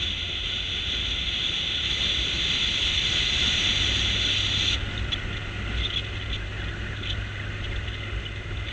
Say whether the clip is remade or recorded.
recorded